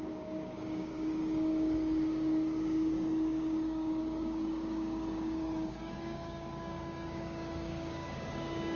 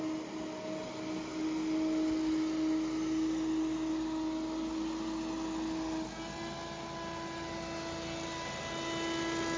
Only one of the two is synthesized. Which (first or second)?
first